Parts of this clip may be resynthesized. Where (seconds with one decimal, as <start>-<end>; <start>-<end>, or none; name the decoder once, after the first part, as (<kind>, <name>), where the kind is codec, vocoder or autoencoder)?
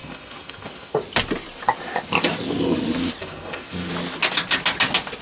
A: 0.0-1.0 (codec, SNAC); 3.2-3.9